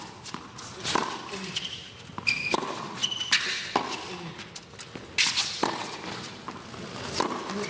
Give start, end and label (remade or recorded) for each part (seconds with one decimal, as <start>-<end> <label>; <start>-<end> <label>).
0.0-7.7 recorded